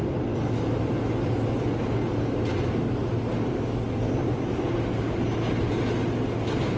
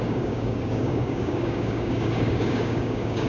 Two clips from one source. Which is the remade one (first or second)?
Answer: second